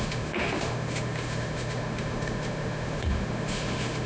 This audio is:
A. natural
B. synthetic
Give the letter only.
B